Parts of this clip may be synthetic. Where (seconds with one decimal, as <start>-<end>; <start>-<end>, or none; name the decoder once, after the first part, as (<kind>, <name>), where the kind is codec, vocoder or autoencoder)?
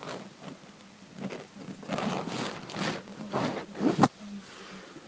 3.1-4.0 (vocoder, BigVGAN v2)